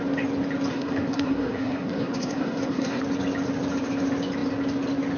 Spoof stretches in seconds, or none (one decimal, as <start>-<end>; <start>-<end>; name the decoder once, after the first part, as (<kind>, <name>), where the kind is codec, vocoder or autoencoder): 0.7-3.0 (codec, SNAC)